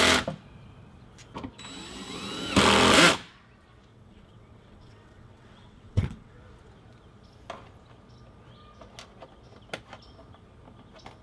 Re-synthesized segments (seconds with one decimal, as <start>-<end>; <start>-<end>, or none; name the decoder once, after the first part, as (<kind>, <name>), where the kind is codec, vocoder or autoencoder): 3.9-6.4 (vocoder, WaveNeXt)